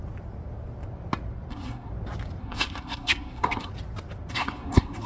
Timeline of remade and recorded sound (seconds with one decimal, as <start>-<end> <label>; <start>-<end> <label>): 0.0-1.5 recorded; 1.5-1.9 remade; 1.9-2.4 recorded; 2.4-3.7 remade; 3.7-4.3 recorded; 4.3-5.1 remade